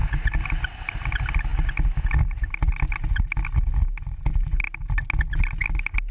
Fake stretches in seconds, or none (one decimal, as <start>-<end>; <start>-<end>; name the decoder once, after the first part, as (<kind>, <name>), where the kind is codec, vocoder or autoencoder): none